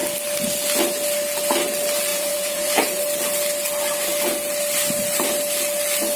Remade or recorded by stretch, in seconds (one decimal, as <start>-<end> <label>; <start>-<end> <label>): 0.0-2.1 recorded; 2.1-3.0 remade; 3.0-6.2 recorded

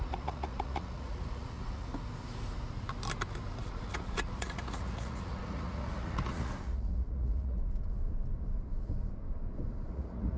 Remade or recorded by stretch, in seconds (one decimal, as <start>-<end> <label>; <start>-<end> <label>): 0.0-1.9 remade; 1.9-3.6 recorded; 3.6-7.6 remade; 7.6-9.9 recorded; 9.9-10.4 remade

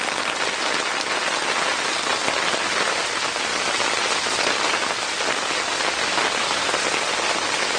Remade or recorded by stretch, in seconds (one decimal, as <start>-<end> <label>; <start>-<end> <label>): 0.0-7.8 recorded

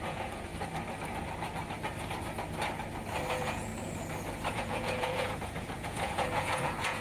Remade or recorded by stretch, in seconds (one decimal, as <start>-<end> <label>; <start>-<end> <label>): 0.0-0.5 remade; 0.5-3.3 recorded; 3.3-3.7 remade; 3.7-4.5 recorded; 4.5-7.0 remade

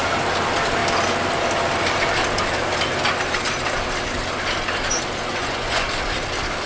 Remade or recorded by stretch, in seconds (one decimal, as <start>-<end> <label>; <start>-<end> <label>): 0.0-5.3 recorded; 5.3-5.9 remade; 5.9-6.7 recorded

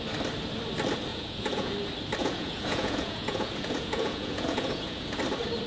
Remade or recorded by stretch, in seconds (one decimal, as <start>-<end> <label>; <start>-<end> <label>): 0.0-1.1 recorded; 1.1-1.7 remade; 1.7-2.2 recorded; 2.2-5.2 remade; 5.2-5.7 recorded

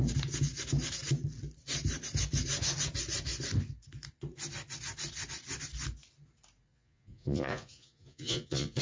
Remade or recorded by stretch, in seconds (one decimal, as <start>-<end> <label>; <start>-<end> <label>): 0.0-6.7 recorded; 6.7-8.8 remade

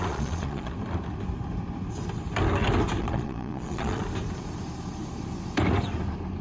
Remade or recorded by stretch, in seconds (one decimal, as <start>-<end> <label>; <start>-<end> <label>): 0.0-0.7 remade; 0.7-3.0 recorded; 3.0-4.0 remade; 4.0-6.4 recorded